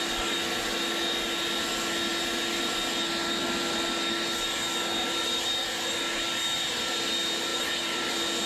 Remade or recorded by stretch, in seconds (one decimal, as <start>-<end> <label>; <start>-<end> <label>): 0.0-7.5 recorded; 7.5-8.1 remade; 8.1-8.5 recorded